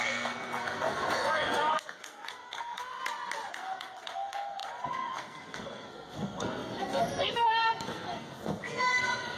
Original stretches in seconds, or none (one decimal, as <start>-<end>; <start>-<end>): 3.0-3.5